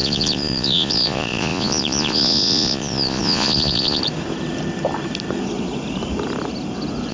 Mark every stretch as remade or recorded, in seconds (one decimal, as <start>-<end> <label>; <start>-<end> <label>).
0.0-4.0 remade; 4.0-7.1 recorded